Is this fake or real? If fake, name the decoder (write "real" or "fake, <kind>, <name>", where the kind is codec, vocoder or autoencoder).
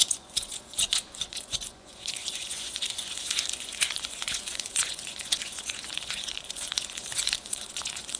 fake, vocoder, Vocos